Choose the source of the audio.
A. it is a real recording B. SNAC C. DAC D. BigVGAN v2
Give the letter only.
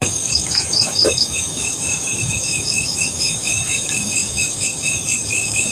C